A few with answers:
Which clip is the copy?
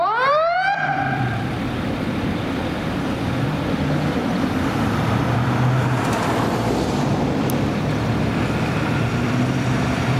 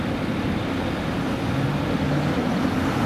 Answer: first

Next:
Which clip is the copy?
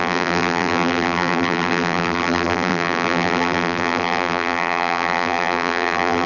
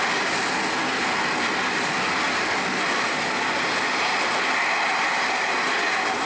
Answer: first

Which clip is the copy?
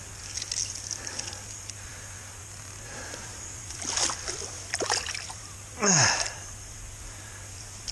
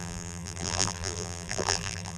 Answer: second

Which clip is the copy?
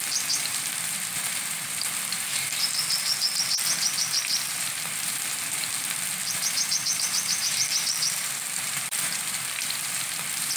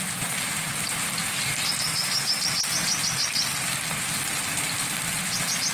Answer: first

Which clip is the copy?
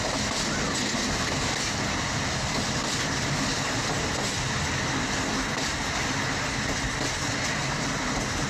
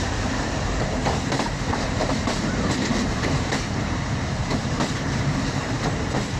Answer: second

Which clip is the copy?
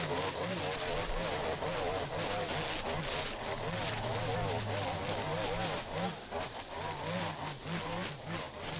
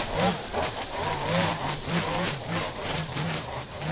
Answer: second